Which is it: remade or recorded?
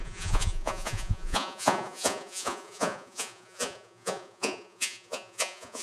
remade